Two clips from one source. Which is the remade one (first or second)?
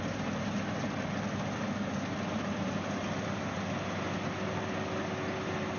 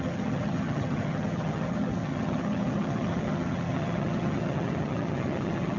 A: second